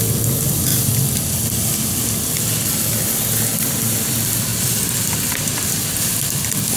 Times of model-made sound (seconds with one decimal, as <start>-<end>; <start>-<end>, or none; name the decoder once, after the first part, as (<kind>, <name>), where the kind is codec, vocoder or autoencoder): none